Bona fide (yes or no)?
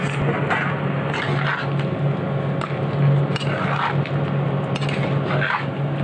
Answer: yes